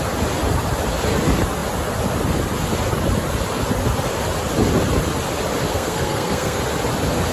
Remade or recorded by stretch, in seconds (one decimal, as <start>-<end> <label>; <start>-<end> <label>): 0.0-5.7 recorded; 5.7-6.6 remade; 6.6-7.3 recorded